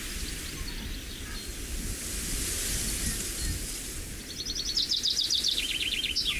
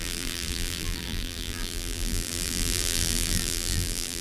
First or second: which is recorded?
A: first